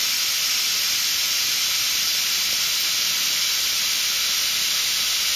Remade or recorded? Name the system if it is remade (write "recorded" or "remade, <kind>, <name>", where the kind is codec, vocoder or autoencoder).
recorded